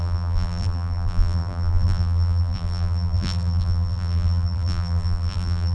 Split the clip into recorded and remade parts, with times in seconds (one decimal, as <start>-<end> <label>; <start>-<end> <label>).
0.0-5.7 remade